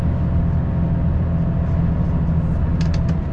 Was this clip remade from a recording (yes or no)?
no